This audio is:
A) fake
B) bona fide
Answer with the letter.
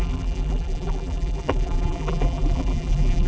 A